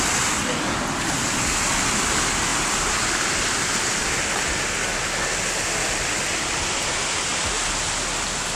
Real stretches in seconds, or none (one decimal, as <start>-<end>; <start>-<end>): 0.0-8.6